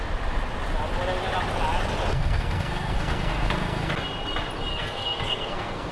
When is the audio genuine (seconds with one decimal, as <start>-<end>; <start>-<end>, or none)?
0.0-2.1; 3.9-4.7

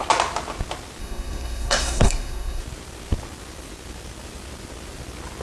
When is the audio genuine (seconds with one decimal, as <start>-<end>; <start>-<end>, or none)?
0.0-1.0; 2.6-5.4

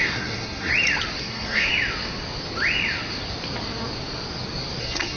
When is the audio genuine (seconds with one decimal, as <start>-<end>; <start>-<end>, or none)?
0.7-1.2; 1.7-4.8

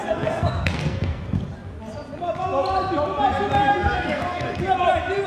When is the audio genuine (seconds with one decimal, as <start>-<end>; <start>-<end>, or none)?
1.4-3.7; 4.6-5.3

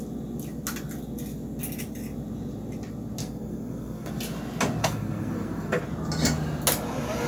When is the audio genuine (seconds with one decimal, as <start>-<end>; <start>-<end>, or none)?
0.0-3.2; 4.1-4.8; 5.8-7.3